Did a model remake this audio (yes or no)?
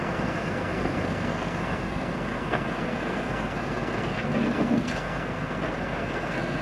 yes